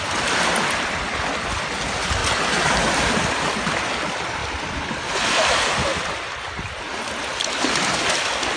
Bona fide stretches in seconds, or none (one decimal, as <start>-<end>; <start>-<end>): 0.0-8.6